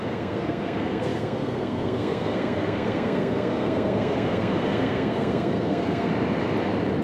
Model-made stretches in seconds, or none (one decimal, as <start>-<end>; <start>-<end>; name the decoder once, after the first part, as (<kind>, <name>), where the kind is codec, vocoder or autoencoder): 0.0-6.1 (codec, SNAC)